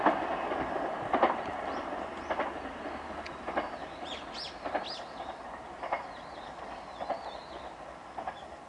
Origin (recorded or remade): recorded